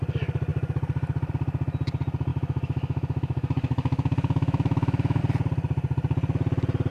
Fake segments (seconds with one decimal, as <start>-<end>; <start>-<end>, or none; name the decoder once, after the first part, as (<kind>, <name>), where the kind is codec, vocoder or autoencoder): 2.3-5.2 (autoencoder, DAC-VAE)